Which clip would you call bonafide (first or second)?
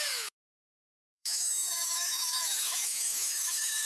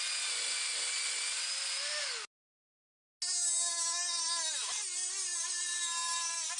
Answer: second